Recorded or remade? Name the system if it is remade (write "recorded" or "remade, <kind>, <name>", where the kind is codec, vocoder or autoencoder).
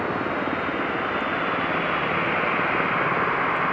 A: recorded